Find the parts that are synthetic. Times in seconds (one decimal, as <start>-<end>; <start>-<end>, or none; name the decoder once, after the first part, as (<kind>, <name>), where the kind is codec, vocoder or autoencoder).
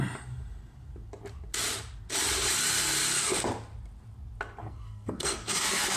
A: 4.6-6.0 (codec, SNAC)